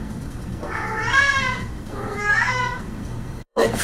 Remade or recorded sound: remade